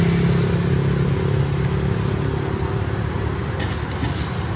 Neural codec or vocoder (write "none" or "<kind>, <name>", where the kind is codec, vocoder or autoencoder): none